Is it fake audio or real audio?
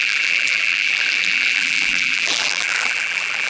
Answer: fake